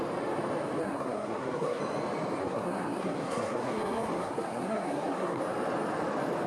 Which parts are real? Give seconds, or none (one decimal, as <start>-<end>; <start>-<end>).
0.0-0.8; 1.8-2.4; 5.4-6.5